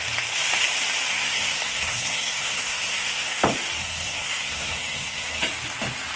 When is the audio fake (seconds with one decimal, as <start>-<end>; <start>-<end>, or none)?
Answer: 1.1-3.4; 3.8-5.4